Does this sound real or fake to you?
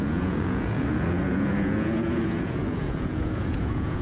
fake